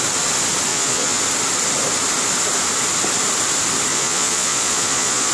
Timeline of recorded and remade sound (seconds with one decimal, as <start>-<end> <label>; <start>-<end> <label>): 0.0-0.7 recorded; 0.7-1.2 remade; 1.2-3.9 recorded; 3.9-5.3 remade